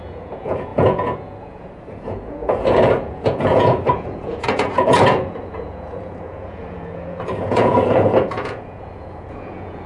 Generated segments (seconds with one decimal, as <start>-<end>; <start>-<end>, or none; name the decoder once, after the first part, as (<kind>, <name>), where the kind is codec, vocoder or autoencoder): 0.0-9.9 (vocoder, Vocos)